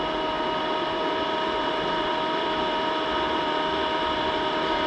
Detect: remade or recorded remade